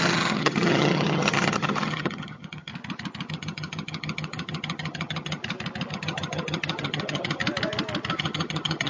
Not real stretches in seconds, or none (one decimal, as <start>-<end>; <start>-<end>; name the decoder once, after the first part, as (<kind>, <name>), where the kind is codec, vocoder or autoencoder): 0.0-2.7 (vocoder, HiFi-GAN); 3.3-5.4; 5.9-7.4; 8.1-8.9